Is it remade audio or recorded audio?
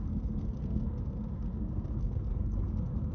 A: remade